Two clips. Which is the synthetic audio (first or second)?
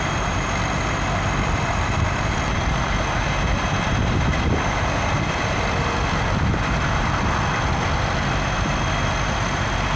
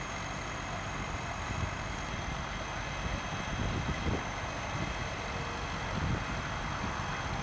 first